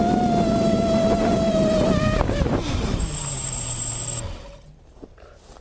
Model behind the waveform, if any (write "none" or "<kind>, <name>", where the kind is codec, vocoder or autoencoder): vocoder, BigVGAN v2